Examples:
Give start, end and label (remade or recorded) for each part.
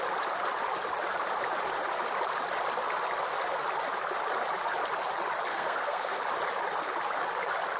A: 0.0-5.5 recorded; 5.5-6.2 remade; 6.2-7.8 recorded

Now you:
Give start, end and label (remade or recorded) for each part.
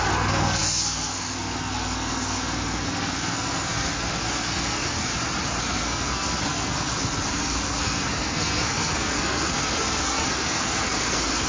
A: 0.0-5.1 remade; 5.1-5.6 recorded; 5.6-11.5 remade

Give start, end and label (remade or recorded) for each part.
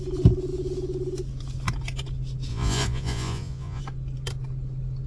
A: 0.0-2.5 recorded; 2.5-3.8 remade; 3.8-5.1 recorded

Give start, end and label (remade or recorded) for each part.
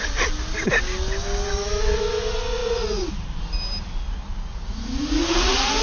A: 0.0-2.6 recorded; 2.6-3.1 remade; 3.1-4.5 recorded; 4.5-5.8 remade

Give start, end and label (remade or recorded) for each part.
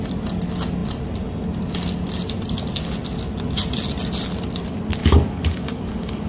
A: 0.0-5.0 recorded; 5.0-6.3 remade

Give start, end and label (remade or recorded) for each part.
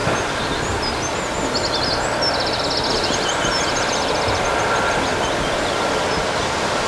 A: 0.0-6.9 recorded